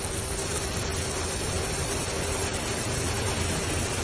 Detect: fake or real real